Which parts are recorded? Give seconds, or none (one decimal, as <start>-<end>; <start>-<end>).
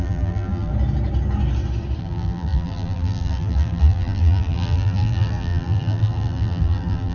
0.7-2.0